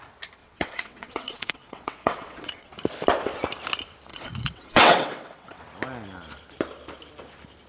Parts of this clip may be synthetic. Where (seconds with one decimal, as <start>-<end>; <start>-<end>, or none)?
0.4-2.7; 4.1-5.6